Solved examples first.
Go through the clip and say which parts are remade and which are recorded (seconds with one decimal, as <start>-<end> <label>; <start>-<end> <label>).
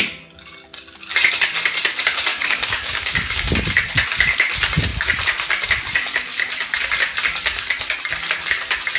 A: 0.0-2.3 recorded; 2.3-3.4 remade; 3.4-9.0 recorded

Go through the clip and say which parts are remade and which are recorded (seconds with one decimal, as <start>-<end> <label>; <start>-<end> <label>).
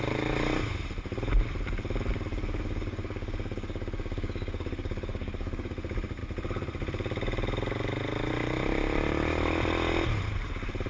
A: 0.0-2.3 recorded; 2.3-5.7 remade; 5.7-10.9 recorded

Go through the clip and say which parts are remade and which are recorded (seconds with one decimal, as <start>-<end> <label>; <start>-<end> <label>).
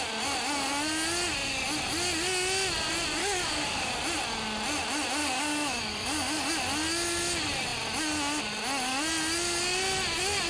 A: 0.0-3.2 recorded; 3.2-3.9 remade; 3.9-5.2 recorded; 5.2-6.5 remade; 6.5-10.5 recorded